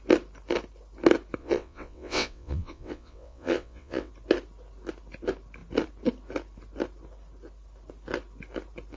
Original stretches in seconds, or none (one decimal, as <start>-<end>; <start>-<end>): 0.0-1.4; 4.1-9.0